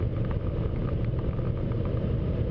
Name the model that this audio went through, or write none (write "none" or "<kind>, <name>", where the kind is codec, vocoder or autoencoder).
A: none